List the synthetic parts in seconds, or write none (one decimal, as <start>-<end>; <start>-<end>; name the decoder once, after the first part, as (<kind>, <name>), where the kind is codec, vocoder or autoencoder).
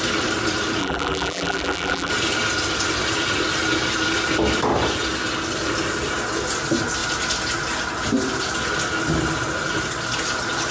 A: 0.8-2.1 (vocoder, BigVGAN v2)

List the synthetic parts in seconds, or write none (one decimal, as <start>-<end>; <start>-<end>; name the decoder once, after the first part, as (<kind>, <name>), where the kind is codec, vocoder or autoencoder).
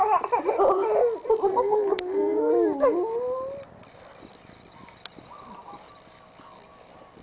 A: 1.5-2.5 (codec, SNAC)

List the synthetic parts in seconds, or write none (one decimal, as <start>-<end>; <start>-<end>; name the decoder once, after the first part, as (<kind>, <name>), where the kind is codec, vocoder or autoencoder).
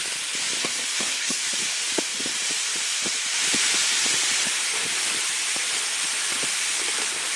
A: 0.6-1.4 (codec, SNAC)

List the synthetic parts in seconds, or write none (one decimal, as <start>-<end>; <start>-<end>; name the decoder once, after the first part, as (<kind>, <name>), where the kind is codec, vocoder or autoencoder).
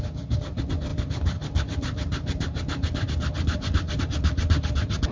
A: 0.9-4.0 (vocoder, BigVGAN v2)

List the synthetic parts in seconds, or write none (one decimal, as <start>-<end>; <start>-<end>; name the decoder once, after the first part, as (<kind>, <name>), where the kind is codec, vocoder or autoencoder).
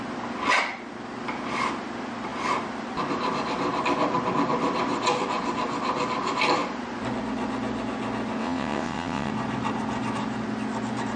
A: 8.4-9.3 (vocoder, WaveNeXt)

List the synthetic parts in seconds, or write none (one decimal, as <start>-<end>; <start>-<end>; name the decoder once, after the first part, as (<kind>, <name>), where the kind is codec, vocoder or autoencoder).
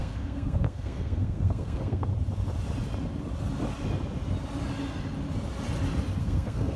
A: 0.0-2.1 (codec, SNAC); 6.2-6.8